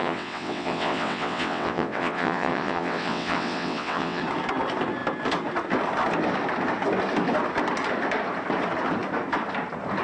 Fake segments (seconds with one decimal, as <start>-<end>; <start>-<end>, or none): 0.0-4.2